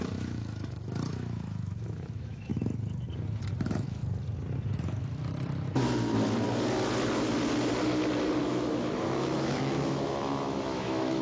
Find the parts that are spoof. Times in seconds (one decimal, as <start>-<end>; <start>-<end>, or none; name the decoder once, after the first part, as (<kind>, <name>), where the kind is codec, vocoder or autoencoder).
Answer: 0.0-2.5 (autoencoder, DAC-VAE); 3.6-4.0; 8.4-11.2